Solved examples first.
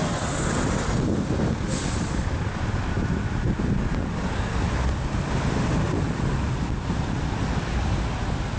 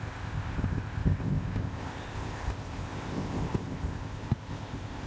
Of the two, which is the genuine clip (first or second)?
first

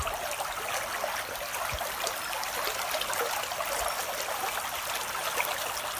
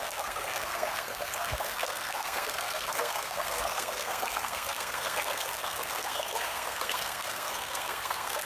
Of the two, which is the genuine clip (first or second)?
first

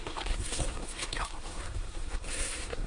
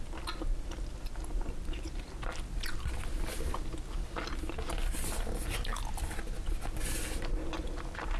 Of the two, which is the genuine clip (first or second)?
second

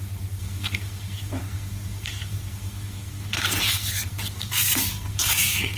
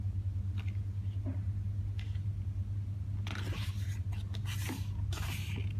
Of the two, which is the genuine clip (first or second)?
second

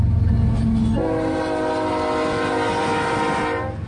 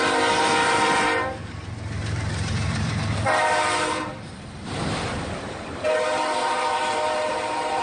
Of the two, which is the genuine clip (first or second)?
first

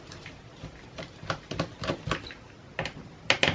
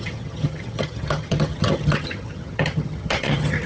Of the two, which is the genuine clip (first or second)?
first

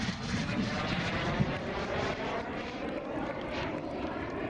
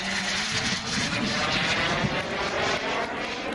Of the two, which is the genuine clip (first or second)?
second